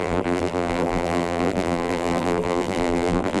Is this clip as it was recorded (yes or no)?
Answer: no